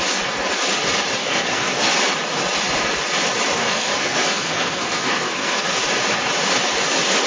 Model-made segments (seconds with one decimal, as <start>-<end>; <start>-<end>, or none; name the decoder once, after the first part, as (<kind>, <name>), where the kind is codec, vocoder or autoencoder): 1.2-1.9 (codec, SNAC); 3.6-5.8